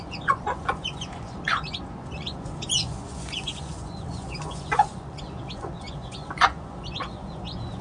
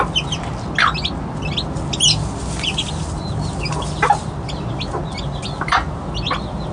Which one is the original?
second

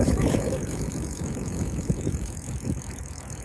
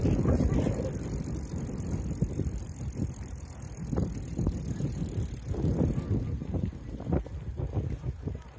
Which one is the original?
second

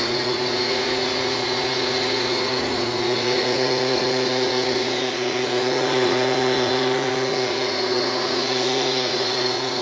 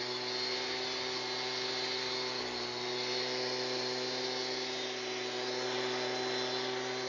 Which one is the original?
second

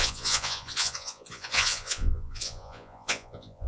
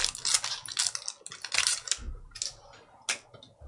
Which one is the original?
second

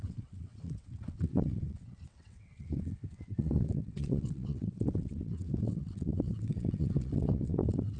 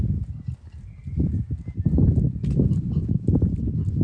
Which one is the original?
second